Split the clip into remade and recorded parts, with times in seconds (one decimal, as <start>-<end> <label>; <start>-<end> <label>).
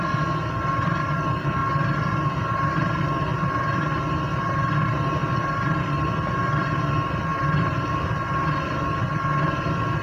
0.0-10.0 recorded